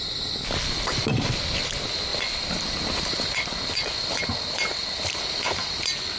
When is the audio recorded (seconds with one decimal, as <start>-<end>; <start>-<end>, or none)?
0.0-2.1; 4.2-4.8; 5.8-6.2